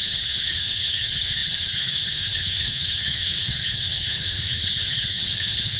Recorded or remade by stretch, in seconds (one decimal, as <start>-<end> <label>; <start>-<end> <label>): 0.0-5.8 remade